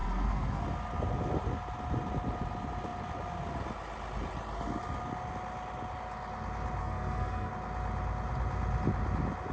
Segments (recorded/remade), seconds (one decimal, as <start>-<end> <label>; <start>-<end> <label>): 0.0-0.6 remade; 0.6-6.8 recorded; 6.8-7.5 remade; 7.5-9.5 recorded